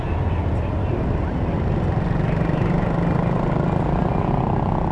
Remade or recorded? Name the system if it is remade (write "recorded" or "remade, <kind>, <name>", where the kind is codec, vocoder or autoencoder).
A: recorded